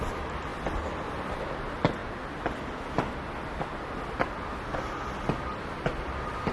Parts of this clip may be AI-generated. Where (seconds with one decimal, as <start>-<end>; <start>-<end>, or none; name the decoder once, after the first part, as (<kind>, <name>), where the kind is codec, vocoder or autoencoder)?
none